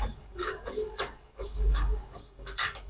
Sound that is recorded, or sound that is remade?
remade